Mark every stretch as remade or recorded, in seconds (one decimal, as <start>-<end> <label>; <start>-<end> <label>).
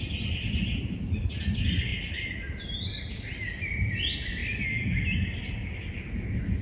0.0-6.6 recorded